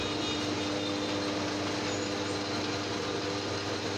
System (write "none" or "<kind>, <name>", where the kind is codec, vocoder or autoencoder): none